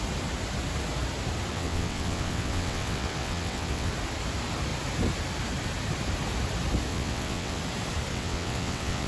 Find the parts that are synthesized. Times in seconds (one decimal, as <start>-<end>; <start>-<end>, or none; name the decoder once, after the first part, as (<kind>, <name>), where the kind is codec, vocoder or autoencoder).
1.5-3.9 (vocoder, WaveNeXt); 6.9-7.6; 8.1-9.1